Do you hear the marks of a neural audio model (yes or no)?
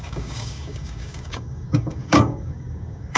yes